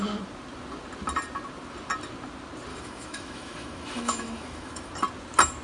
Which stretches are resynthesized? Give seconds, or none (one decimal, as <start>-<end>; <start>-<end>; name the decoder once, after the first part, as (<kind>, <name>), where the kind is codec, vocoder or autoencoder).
2.7-4.9 (autoencoder, DAC-VAE)